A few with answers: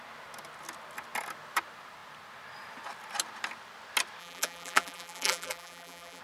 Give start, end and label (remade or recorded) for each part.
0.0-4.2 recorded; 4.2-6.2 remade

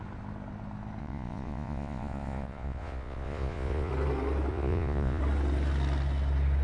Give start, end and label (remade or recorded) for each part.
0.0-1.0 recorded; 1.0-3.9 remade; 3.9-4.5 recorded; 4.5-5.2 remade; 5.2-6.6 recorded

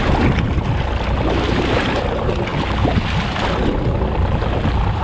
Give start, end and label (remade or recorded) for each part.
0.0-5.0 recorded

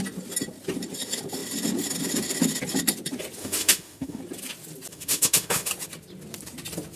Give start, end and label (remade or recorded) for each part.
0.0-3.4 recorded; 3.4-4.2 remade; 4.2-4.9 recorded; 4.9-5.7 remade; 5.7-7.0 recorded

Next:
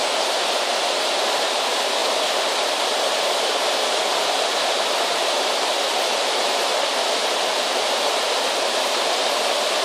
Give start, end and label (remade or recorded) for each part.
0.0-2.0 remade; 2.0-3.3 recorded; 3.3-6.7 remade; 6.7-7.6 recorded; 7.6-9.8 remade